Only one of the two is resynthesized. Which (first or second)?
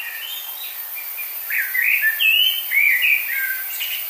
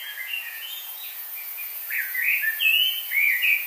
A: second